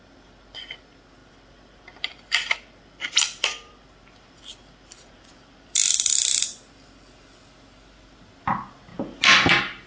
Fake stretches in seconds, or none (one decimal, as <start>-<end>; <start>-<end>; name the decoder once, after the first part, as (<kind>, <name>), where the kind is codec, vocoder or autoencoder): 1.2-6.4 (vocoder, BigVGAN v2)